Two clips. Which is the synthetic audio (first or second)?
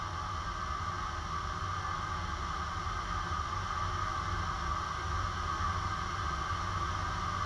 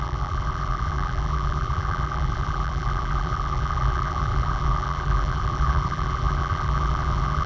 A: second